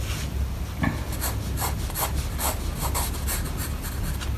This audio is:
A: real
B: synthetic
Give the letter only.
A